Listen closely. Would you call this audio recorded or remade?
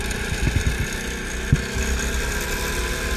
recorded